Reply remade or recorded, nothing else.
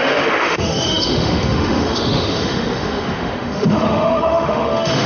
remade